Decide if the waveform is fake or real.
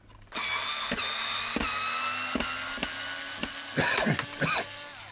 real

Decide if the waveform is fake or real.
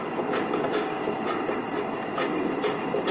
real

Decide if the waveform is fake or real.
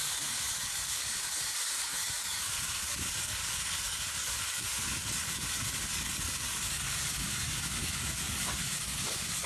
fake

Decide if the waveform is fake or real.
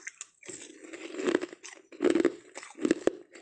real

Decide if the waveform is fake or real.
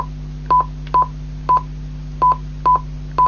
real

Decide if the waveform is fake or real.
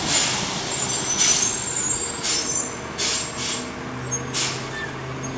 real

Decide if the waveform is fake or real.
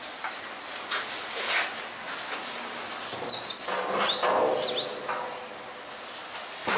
real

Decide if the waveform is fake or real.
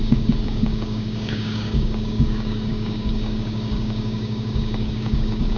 fake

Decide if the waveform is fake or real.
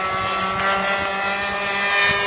real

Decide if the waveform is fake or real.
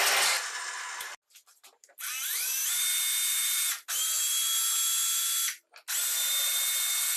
real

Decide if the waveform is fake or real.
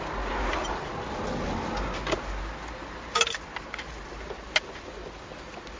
real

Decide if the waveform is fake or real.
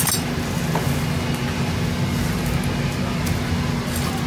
real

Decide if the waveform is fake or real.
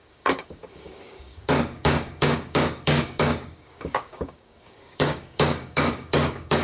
fake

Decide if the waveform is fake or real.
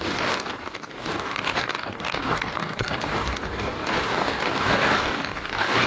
fake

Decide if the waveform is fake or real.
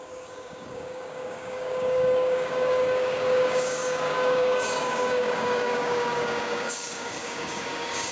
fake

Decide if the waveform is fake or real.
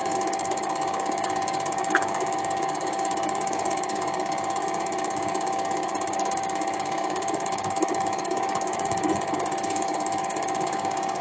fake